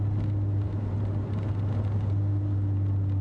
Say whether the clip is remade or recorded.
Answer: recorded